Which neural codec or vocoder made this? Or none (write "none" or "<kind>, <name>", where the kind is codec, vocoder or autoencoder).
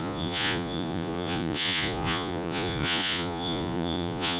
vocoder, Vocos